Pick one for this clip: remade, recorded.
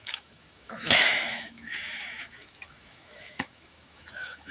remade